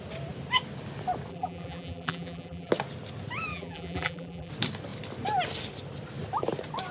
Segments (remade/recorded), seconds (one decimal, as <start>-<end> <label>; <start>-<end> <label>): 0.0-1.3 recorded; 1.3-2.7 remade; 2.7-3.5 recorded; 3.5-4.5 remade; 4.5-6.9 recorded